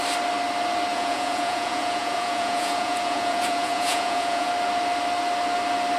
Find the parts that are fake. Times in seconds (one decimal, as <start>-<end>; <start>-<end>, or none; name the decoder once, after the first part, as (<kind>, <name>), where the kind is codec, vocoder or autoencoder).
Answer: 0.9-4.5 (vocoder, Vocos)